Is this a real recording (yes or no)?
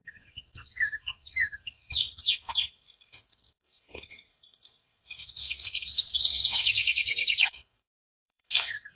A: no